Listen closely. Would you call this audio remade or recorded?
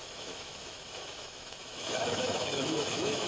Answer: remade